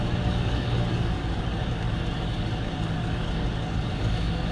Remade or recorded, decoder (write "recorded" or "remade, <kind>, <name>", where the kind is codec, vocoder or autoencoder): remade, codec, DAC